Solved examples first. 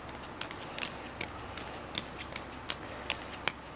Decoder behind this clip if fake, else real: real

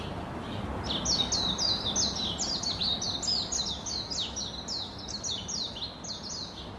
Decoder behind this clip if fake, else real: real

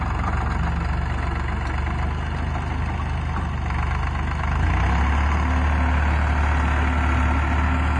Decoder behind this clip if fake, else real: real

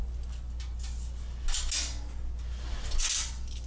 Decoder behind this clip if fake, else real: real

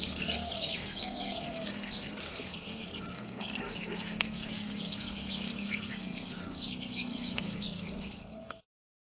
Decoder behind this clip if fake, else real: fake, codec, SNAC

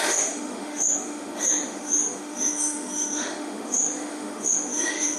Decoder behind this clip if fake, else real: fake, autoencoder, DAC-VAE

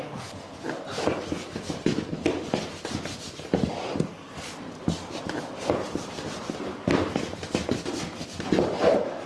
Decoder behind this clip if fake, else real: real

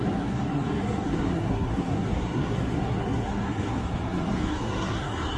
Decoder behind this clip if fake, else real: fake, codec, SNAC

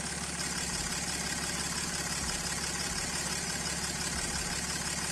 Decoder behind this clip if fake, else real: real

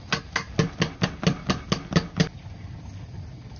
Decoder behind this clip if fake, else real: real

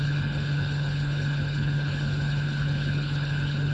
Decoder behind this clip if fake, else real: fake, codec, HILCodec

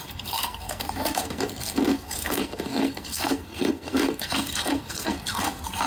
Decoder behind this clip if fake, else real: fake, codec, SNAC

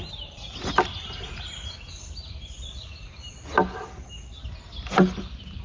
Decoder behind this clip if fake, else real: real